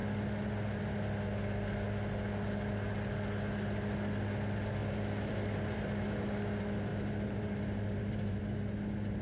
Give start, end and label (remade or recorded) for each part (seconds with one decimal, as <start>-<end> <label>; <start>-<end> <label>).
0.0-4.8 recorded; 4.8-6.0 remade; 6.0-6.9 recorded; 6.9-8.4 remade; 8.4-9.2 recorded